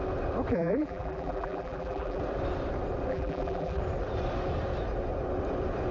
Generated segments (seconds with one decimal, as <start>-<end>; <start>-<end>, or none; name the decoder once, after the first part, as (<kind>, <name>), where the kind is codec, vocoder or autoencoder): 0.5-2.2 (vocoder, BigVGAN v2); 3.1-3.8